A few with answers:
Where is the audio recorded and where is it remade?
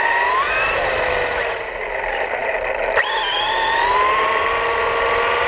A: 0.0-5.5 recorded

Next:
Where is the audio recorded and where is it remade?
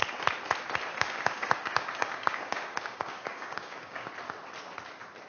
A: 0.0-0.9 recorded; 0.9-4.1 remade; 4.1-5.3 recorded